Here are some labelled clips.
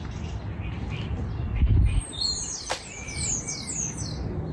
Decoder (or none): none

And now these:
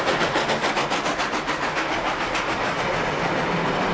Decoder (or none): none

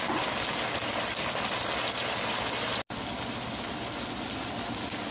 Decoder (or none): none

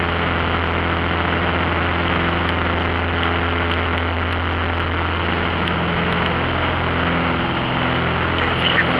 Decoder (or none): none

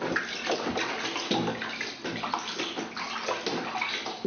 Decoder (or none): none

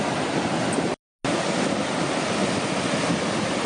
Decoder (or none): none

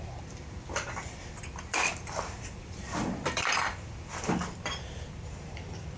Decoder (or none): vocoder, BigVGAN v2